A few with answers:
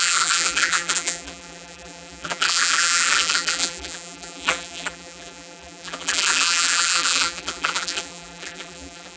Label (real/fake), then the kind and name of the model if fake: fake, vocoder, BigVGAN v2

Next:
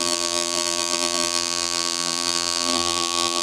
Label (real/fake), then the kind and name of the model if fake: fake, vocoder, BigVGAN v2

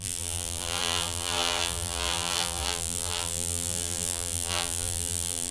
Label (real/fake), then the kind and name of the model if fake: fake, vocoder, BigVGAN v2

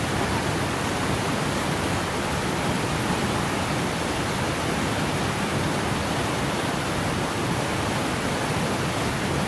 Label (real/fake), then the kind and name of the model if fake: real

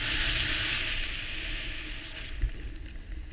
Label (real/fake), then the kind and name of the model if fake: real